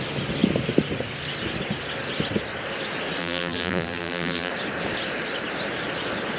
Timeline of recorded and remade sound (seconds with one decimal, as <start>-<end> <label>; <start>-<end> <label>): 0.0-3.2 recorded; 3.2-4.5 remade; 4.5-6.4 recorded